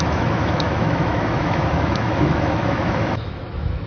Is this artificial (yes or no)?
yes